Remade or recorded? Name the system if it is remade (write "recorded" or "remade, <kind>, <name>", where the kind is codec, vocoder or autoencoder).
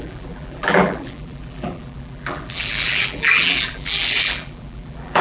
remade, vocoder, BigVGAN v2